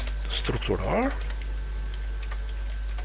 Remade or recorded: recorded